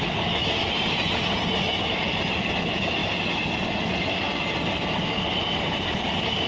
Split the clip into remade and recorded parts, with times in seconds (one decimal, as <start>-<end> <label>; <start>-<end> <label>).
0.0-6.5 recorded